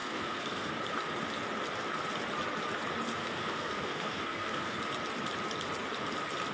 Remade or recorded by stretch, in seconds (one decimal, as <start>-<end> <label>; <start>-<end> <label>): 0.0-0.7 remade; 0.7-3.2 recorded; 3.2-4.8 remade; 4.8-6.5 recorded